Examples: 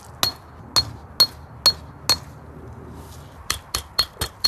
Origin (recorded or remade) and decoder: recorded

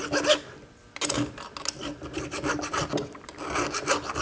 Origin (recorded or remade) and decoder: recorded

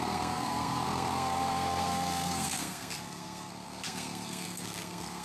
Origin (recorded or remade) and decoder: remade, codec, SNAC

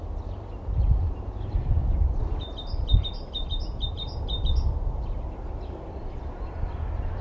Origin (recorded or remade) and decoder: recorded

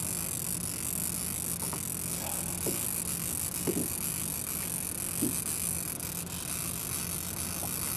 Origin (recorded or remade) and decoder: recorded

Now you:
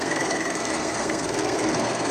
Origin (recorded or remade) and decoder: remade, codec, SNAC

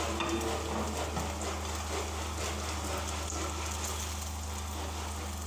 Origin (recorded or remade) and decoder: recorded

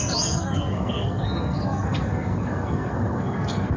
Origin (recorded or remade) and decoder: remade, codec, SNAC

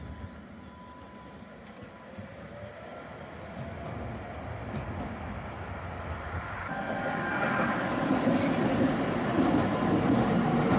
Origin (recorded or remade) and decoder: recorded